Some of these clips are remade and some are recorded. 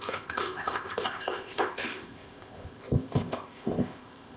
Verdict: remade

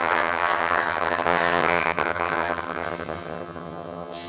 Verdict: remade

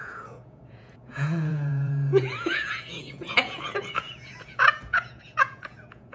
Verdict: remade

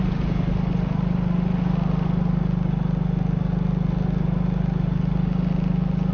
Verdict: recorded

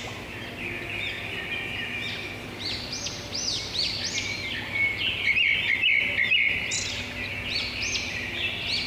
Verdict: recorded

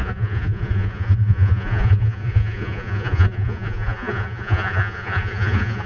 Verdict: remade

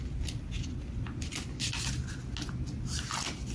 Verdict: recorded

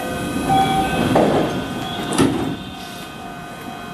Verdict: recorded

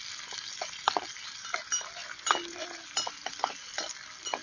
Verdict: recorded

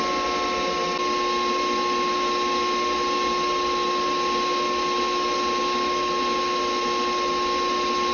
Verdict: recorded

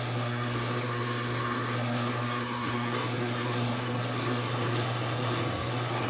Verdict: remade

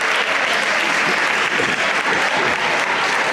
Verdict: recorded